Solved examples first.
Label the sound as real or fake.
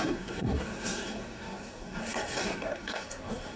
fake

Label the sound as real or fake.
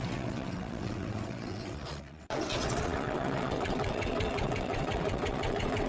fake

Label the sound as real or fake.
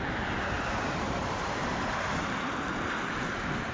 fake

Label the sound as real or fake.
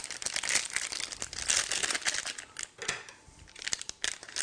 real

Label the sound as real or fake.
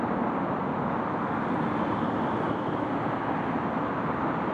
real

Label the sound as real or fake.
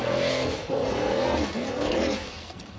fake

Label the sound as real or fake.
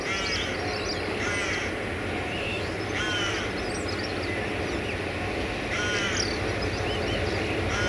real